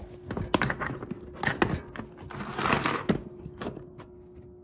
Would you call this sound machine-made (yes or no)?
no